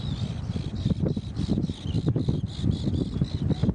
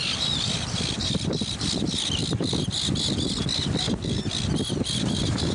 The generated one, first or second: second